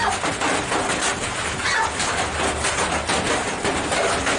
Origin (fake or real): real